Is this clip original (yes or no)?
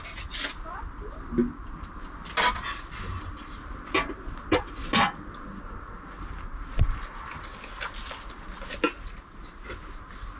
yes